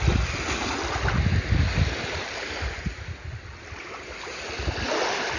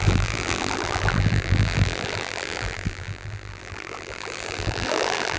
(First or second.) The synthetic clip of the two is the second